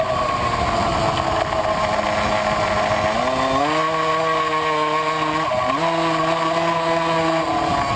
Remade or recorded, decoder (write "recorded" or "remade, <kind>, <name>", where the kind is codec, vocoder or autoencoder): recorded